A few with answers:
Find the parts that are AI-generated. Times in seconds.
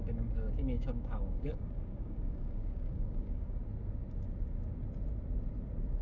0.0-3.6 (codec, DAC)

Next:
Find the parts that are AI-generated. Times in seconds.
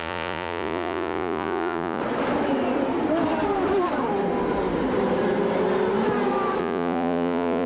0.0-2.0 (vocoder, Vocos); 6.6-7.7